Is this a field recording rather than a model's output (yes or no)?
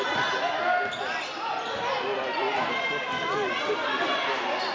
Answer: yes